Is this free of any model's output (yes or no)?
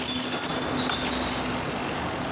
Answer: yes